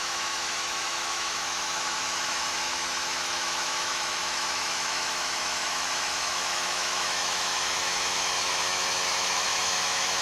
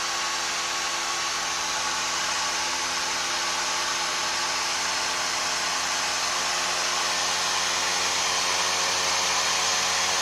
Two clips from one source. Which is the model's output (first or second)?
first